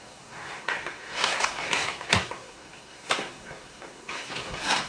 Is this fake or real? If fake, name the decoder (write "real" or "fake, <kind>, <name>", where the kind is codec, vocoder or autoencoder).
fake, codec, SNAC